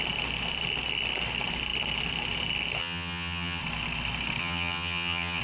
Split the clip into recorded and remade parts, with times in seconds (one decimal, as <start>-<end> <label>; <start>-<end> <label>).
0.0-2.8 recorded; 2.8-3.6 remade; 3.6-4.4 recorded; 4.4-5.4 remade